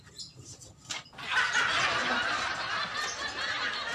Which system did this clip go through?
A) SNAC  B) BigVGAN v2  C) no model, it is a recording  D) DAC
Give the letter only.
C